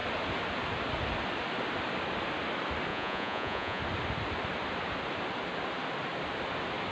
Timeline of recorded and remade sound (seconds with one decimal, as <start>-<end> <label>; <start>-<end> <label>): 0.0-2.9 recorded; 2.9-3.8 remade; 3.8-6.9 recorded